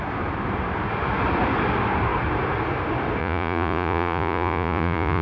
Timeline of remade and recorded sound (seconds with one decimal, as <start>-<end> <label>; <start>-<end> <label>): 0.0-3.2 recorded; 3.2-5.2 remade